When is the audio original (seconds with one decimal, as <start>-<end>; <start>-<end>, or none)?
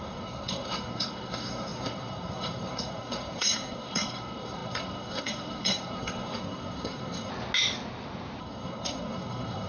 7.3-8.4